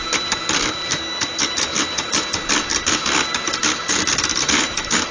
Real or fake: real